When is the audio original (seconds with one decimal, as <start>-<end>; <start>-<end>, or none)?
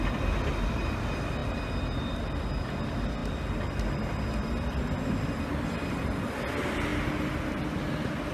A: 0.0-8.3